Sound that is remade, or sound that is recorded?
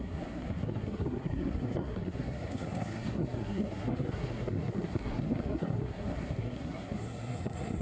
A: remade